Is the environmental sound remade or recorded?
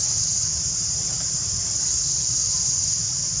recorded